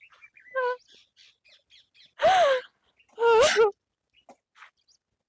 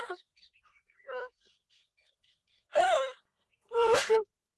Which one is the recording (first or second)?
first